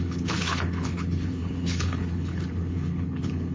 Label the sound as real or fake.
fake